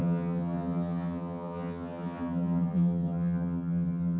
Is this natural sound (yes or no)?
no